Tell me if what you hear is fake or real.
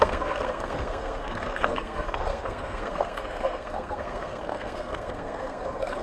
fake